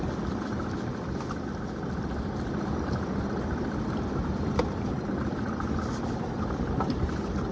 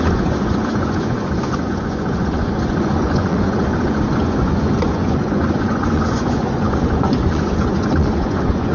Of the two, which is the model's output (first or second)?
second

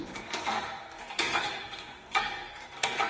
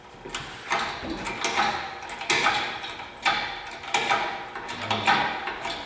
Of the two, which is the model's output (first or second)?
first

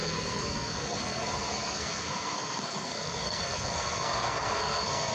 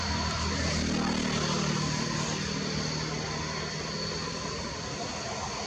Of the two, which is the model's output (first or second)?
first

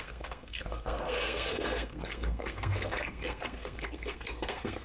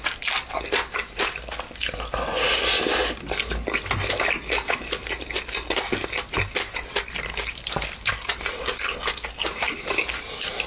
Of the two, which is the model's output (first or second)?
first